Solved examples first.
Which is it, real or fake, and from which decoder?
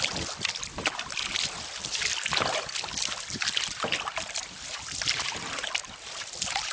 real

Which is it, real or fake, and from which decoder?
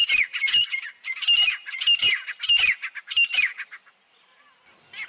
real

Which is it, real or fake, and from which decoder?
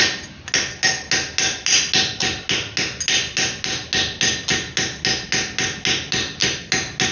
real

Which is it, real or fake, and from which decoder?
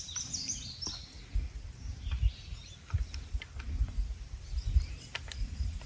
real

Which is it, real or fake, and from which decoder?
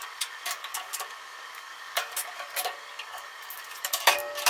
fake, codec, DAC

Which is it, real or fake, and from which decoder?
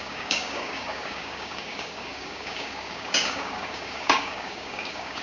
fake, codec, DAC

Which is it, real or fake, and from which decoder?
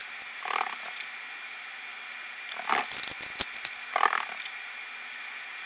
real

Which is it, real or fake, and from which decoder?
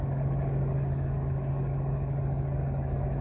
fake, codec, DAC